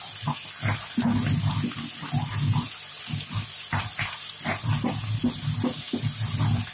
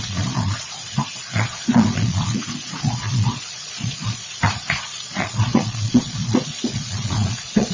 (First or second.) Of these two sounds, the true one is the first